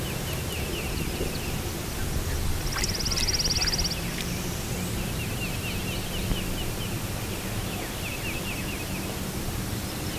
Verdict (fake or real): real